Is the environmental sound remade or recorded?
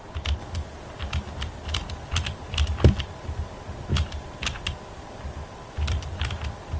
recorded